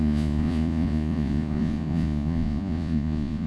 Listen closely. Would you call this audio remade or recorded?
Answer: remade